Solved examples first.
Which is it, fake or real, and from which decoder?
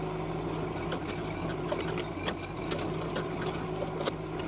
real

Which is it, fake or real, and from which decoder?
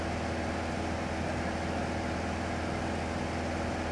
real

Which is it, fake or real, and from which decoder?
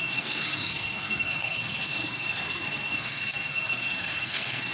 fake, codec, SNAC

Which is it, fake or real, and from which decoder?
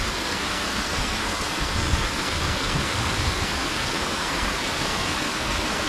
fake, codec, SNAC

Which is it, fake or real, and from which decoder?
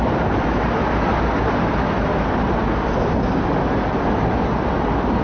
real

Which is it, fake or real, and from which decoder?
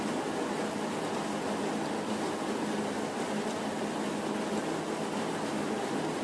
real